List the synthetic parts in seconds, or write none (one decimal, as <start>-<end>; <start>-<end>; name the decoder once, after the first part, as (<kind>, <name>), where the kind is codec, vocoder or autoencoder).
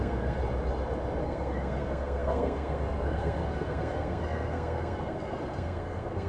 0.0-0.4 (codec, SNAC); 1.2-6.3